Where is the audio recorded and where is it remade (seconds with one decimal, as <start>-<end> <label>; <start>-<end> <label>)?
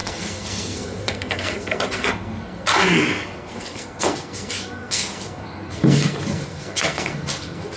0.0-7.8 remade